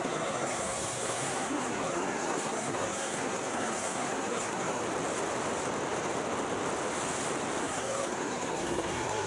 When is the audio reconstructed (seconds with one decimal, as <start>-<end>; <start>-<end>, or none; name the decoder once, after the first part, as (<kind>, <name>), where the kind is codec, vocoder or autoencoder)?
0.0-4.8 (codec, SNAC); 7.6-9.3